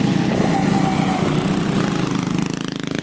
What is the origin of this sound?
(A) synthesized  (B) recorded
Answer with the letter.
B